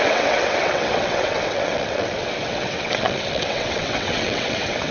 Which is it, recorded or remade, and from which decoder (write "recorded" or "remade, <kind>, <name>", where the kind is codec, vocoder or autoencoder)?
remade, vocoder, WaveNeXt